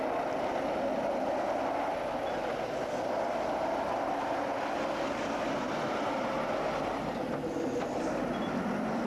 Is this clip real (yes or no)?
yes